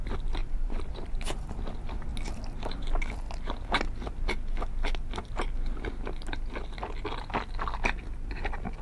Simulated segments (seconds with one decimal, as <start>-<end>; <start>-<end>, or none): 0.4-1.6